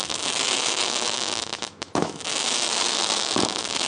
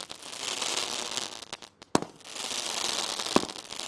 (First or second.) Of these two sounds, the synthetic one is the first